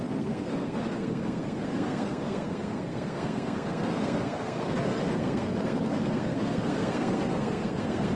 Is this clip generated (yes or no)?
yes